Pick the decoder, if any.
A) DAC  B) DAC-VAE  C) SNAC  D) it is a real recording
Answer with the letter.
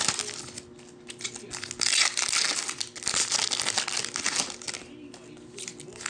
D